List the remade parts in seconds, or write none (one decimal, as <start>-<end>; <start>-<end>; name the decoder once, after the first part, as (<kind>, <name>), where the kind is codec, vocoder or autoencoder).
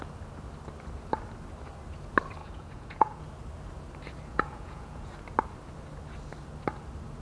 2.4-3.2 (vocoder, Vocos); 4.3-5.1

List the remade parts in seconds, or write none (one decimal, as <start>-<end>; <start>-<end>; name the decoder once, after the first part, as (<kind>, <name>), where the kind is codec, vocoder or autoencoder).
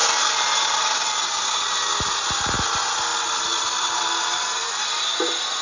none